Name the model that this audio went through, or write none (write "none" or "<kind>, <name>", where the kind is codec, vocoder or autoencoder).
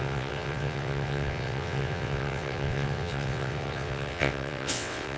vocoder, WaveNeXt